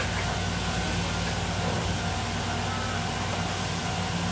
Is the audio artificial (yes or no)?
no